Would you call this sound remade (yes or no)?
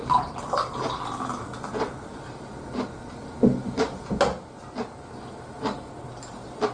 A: no